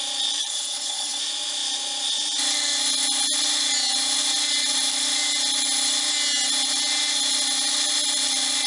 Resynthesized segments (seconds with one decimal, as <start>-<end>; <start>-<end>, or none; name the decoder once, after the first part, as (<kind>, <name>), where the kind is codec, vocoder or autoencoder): 0.4-1.2 (codec, HILCodec)